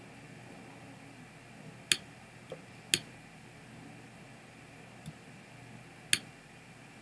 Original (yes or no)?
yes